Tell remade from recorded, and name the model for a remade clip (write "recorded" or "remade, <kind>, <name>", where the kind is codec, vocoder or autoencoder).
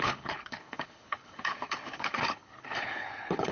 remade, codec, HILCodec